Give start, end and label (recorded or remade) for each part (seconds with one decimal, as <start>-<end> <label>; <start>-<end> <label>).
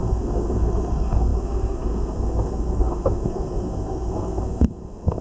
0.0-5.2 remade